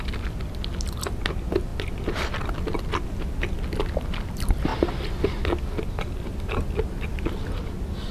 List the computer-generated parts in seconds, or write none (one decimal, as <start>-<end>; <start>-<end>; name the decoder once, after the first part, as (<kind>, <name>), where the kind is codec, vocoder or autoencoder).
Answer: none

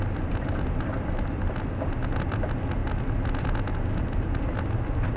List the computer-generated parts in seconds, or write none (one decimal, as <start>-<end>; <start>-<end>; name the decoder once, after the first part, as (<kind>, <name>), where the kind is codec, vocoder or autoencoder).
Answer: none

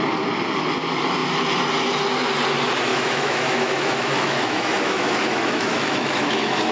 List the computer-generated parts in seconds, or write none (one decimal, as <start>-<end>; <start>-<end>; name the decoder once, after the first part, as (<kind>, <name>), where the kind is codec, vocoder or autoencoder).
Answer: 2.9-6.7 (autoencoder, DAC-VAE)

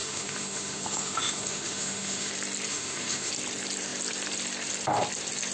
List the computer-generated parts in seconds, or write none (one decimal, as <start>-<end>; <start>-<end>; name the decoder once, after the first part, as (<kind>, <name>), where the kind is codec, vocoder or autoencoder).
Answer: 0.0-2.3 (autoencoder, DAC-VAE); 2.7-3.3

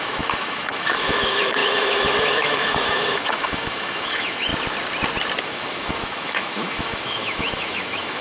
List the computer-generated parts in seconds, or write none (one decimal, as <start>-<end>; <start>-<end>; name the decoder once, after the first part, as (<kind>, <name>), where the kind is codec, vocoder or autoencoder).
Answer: 0.0-4.5 (autoencoder, DAC-VAE); 5.4-8.2